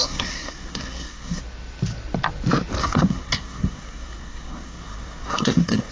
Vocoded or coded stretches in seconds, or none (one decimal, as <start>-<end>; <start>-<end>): 0.0-1.4; 2.8-5.9